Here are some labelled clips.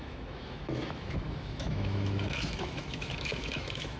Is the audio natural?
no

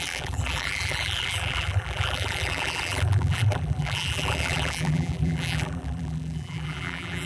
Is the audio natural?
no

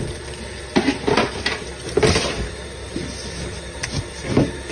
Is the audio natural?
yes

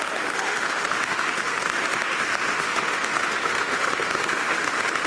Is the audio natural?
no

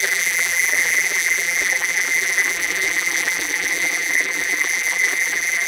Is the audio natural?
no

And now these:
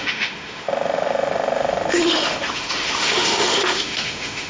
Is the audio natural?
no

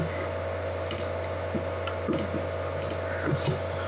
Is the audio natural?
yes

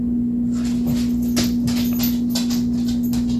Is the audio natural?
yes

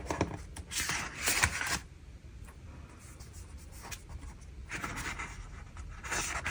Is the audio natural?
yes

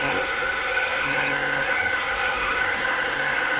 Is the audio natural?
no